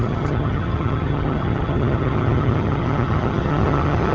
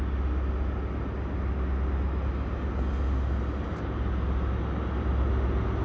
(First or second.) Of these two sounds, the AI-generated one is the first